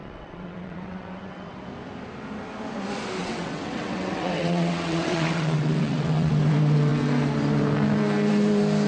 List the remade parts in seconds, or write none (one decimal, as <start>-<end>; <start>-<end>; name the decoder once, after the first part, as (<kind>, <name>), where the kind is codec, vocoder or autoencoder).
0.0-1.6 (vocoder, WaveNeXt); 3.2-6.3